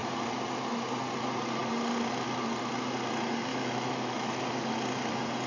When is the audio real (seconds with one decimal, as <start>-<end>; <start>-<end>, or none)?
0.0-3.5; 4.4-5.5

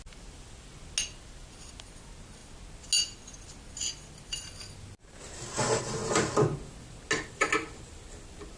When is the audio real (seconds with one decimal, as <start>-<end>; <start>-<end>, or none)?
0.0-8.6